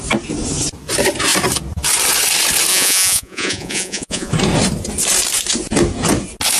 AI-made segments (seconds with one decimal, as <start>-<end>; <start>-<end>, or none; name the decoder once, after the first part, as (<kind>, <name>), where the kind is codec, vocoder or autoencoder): 2.7-4.3 (vocoder, Vocos)